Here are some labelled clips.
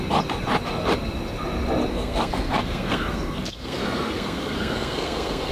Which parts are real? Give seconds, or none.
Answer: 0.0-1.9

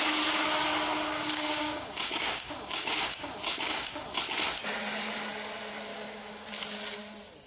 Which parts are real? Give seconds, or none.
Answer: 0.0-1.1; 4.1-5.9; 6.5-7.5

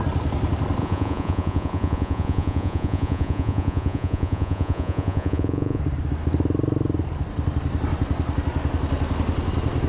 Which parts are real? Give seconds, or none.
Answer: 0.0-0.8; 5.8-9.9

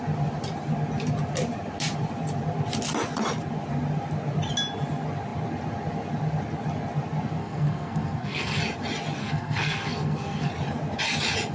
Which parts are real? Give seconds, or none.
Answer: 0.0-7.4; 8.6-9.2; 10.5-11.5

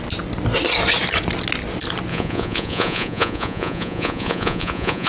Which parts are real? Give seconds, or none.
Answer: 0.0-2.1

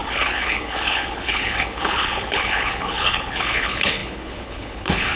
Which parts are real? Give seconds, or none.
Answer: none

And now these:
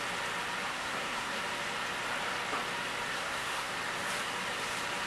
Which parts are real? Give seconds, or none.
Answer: 0.0-0.7; 1.4-3.1; 3.7-5.1

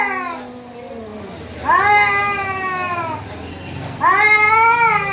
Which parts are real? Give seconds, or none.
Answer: 0.0-3.5; 4.0-5.1